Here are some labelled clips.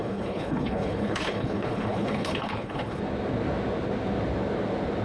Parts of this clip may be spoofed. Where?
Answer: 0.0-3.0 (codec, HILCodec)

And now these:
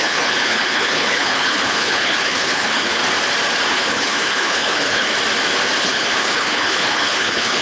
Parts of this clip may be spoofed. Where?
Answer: 0.0-3.0 (codec, HILCodec); 3.7-5.1; 5.8-7.6